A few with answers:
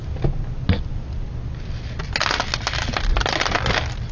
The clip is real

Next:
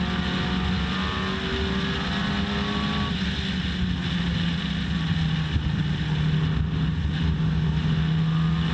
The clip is real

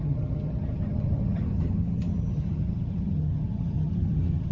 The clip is fake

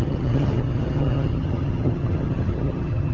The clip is fake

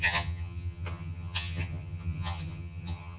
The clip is fake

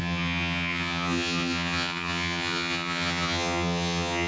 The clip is fake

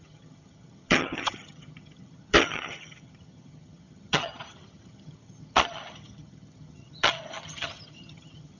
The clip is fake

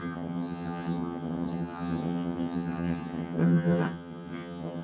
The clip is fake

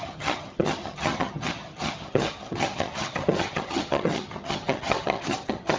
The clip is fake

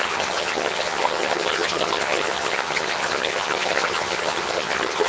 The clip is fake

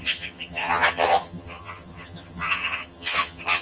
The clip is fake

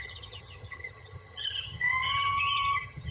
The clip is fake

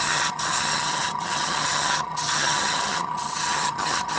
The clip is fake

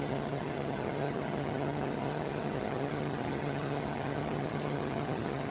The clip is fake